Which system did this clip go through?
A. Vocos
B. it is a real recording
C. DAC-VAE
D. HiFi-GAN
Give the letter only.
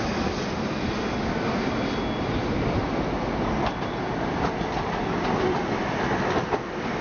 B